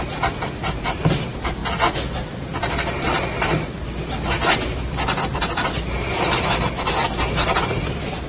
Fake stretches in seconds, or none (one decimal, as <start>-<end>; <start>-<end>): 0.0-1.6; 3.6-8.3